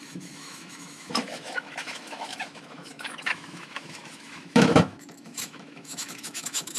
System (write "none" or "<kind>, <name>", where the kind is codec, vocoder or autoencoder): autoencoder, DAC-VAE